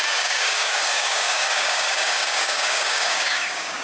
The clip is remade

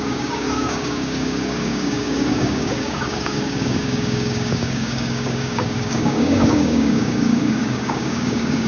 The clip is remade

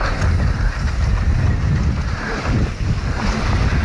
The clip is recorded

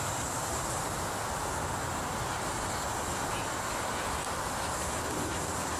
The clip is recorded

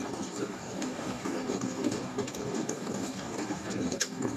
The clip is remade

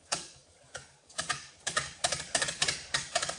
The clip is remade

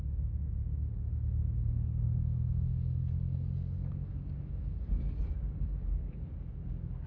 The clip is remade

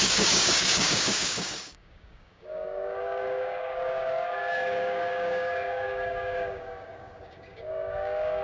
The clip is remade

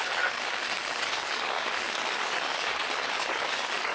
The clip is remade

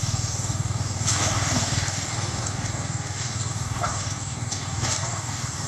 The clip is remade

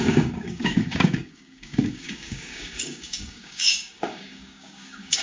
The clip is remade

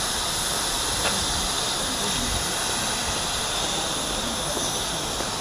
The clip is recorded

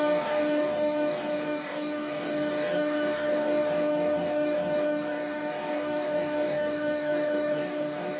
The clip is remade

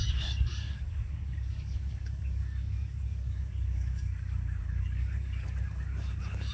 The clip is remade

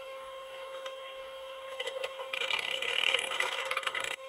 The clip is remade